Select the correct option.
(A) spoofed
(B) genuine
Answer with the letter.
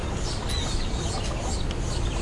B